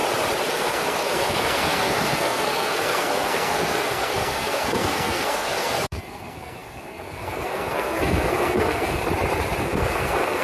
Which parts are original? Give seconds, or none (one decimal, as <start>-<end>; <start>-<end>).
0.0-0.5; 9.0-9.6